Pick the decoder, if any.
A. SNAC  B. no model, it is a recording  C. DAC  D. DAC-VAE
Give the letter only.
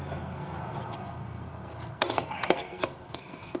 A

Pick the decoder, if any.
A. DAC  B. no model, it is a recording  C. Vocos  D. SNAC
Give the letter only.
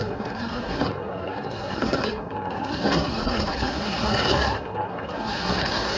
D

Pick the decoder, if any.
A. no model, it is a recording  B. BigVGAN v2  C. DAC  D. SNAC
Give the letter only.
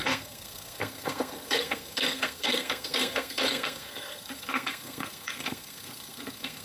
D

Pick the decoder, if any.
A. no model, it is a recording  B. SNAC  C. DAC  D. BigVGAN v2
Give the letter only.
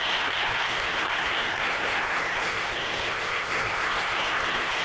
B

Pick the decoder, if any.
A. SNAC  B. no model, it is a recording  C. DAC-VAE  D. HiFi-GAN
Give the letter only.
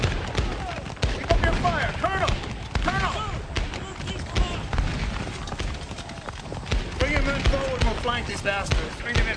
B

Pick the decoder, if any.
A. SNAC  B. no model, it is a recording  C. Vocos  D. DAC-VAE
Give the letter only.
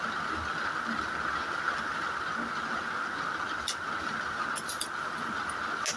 B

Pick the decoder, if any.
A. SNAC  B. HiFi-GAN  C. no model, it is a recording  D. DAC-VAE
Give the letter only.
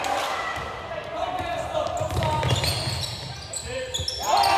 C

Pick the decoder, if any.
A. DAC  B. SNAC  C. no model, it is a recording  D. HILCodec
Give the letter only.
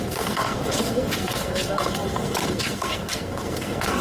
B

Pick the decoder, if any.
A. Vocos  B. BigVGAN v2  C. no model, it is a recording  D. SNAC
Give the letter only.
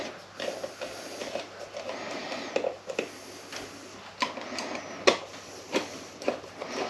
C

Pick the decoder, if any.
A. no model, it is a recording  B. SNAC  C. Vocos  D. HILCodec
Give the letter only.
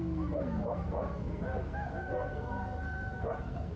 B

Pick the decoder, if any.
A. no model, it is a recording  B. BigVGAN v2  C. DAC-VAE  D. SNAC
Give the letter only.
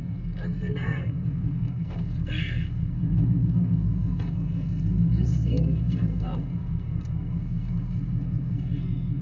D